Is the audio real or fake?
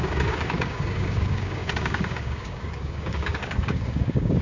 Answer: fake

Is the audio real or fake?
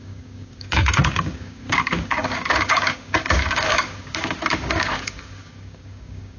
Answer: fake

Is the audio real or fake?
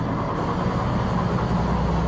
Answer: real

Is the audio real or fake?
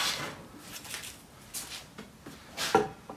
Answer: real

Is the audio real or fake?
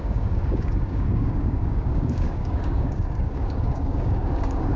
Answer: fake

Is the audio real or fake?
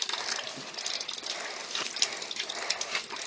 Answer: real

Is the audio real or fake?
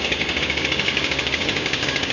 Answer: fake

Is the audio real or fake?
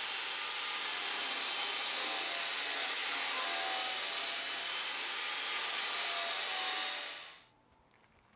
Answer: real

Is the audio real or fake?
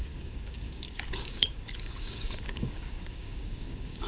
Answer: fake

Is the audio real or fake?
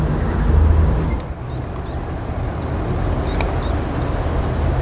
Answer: real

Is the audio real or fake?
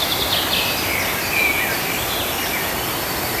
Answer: real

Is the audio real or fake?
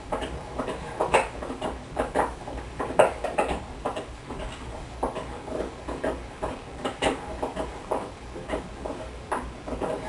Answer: fake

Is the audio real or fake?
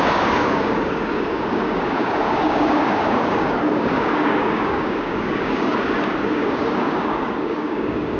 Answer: fake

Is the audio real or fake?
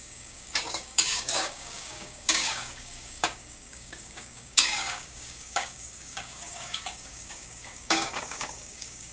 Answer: fake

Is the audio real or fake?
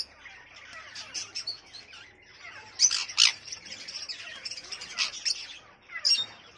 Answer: real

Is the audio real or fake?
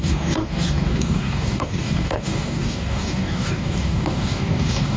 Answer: fake